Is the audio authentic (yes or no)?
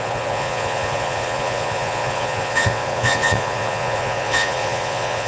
no